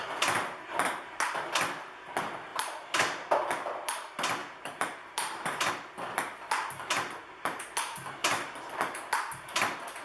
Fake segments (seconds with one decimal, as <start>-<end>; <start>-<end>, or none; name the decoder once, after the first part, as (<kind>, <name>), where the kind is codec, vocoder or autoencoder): 2.5-3.3 (vocoder, BigVGAN v2); 4.4-5.7